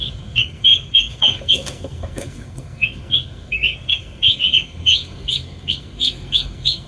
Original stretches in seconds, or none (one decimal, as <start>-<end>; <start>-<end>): none